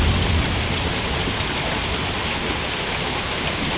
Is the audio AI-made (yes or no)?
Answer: no